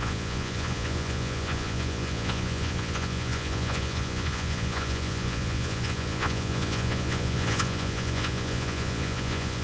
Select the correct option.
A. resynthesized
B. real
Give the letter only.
A